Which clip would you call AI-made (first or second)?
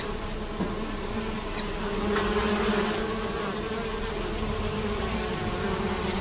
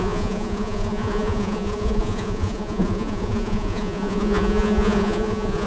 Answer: second